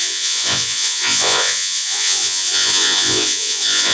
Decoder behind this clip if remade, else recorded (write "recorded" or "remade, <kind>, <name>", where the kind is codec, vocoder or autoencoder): remade, vocoder, Vocos